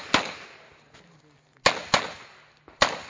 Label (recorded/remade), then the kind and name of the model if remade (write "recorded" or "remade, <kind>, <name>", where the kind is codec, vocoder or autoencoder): recorded